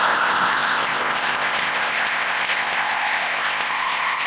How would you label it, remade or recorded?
remade